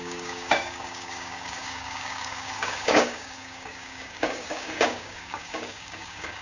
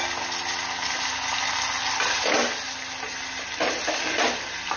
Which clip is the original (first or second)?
second